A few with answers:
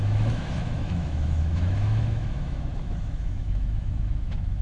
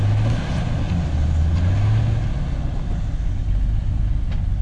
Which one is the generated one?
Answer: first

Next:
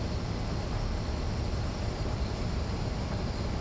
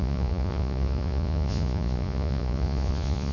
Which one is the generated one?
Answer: second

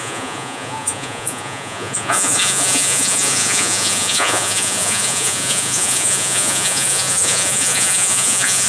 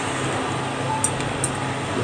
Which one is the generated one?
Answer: first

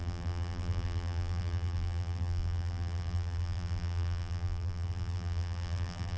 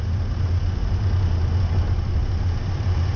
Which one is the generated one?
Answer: first